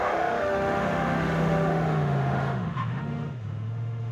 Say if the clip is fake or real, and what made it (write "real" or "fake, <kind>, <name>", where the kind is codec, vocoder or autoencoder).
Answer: fake, autoencoder, DAC-VAE